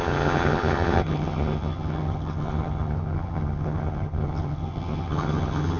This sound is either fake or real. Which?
fake